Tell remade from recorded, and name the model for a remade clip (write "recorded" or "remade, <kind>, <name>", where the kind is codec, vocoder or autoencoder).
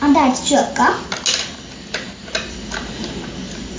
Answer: recorded